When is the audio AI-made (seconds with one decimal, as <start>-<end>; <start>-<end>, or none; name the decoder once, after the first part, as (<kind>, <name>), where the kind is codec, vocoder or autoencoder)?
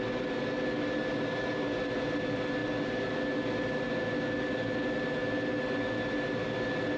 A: none